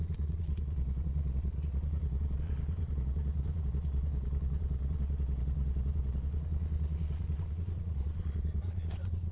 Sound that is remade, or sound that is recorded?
remade